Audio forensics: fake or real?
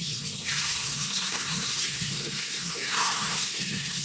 fake